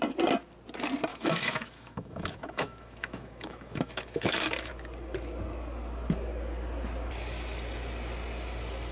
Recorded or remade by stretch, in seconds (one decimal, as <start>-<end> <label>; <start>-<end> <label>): 0.0-1.1 recorded; 1.1-4.7 remade; 4.7-8.9 recorded